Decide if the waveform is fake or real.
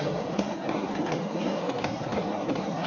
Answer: fake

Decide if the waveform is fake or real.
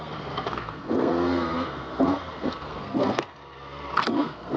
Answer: fake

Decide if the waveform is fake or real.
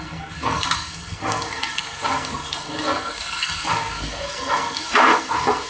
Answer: fake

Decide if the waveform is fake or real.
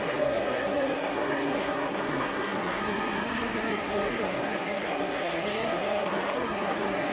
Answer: fake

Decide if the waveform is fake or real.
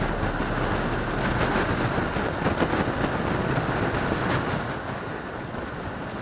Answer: real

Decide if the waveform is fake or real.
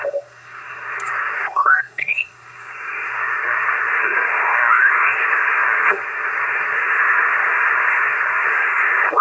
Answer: fake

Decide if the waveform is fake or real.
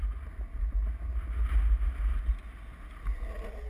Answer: real